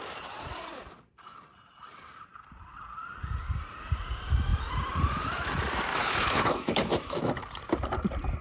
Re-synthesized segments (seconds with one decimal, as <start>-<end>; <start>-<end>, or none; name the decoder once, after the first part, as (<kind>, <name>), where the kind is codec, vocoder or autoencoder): 5.9-7.3 (autoencoder, DAC-VAE)